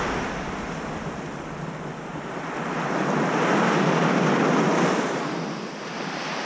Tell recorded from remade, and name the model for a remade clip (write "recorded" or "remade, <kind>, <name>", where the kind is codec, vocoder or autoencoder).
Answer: recorded